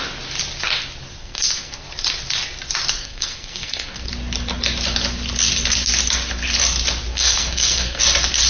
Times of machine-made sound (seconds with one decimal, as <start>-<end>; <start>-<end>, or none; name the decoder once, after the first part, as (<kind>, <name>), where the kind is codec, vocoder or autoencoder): 1.2-1.9 (codec, SNAC); 3.0-4.1; 7.1-8.0